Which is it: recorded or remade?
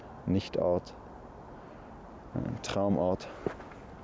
recorded